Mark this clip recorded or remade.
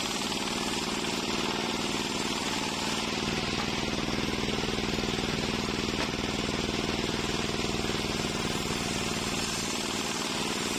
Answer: recorded